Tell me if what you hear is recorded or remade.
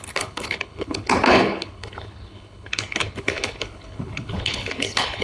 remade